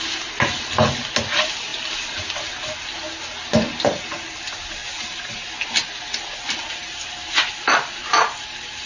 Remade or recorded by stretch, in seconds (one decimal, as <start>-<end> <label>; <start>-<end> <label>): 0.0-8.9 recorded